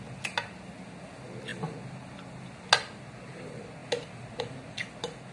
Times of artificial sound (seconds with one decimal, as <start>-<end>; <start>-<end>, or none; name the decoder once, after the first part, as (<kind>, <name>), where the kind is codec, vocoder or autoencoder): none

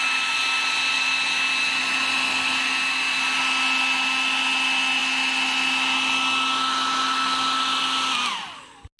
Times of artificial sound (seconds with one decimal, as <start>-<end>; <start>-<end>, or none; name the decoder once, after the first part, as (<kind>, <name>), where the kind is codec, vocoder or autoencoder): none

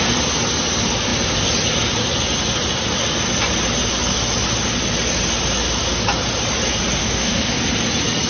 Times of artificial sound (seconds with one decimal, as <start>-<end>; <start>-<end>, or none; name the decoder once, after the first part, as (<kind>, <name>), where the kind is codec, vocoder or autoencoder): 7.0-7.6 (autoencoder, DAC-VAE)

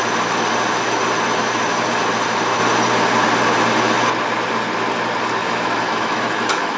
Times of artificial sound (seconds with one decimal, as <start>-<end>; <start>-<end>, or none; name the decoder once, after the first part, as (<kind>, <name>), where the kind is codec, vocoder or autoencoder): 5.4-6.8 (autoencoder, DAC-VAE)

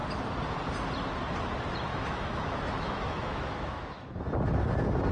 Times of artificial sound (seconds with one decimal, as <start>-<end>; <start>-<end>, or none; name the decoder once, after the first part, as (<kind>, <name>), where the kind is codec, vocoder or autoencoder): 1.9-4.2 (autoencoder, DAC-VAE)

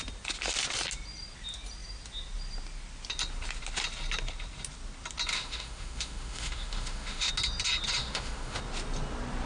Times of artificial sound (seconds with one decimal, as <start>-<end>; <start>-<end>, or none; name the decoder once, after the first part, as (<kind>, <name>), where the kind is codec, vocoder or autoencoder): 5.3-7.3 (autoencoder, DAC-VAE); 8.0-8.6

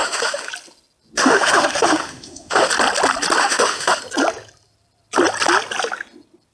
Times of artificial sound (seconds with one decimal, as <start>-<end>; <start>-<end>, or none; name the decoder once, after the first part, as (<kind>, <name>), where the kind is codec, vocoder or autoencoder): 0.0-0.5 (autoencoder, DAC-VAE); 1.2-2.7; 3.4-4.0

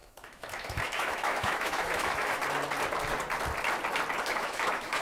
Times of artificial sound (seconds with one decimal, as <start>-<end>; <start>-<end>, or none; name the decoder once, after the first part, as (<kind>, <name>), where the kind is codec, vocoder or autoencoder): 0.0-2.4 (autoencoder, DAC-VAE); 4.2-5.0